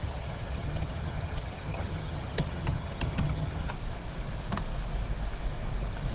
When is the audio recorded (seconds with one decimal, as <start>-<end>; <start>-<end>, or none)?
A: 3.7-6.1